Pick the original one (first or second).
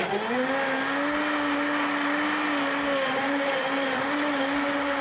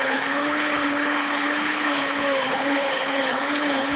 first